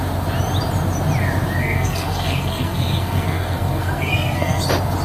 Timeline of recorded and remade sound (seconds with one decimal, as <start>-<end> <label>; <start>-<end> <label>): 0.0-1.6 recorded; 1.6-4.6 remade; 4.6-5.0 recorded